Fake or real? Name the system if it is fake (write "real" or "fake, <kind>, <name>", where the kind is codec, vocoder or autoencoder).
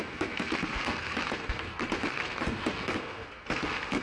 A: fake, codec, SNAC